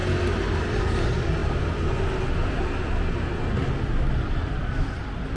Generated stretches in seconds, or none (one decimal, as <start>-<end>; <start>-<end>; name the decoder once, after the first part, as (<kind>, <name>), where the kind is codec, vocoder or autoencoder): none